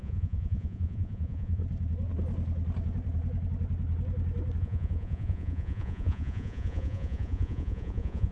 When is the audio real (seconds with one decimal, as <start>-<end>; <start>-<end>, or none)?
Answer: 1.6-4.6